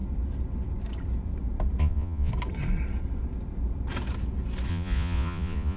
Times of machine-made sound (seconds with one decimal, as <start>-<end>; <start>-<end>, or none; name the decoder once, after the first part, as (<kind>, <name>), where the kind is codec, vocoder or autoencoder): 1.8-2.3 (vocoder, Vocos); 4.7-5.8